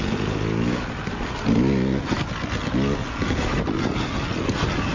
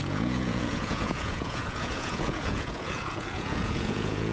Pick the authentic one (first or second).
first